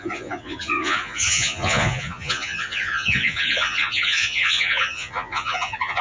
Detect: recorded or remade remade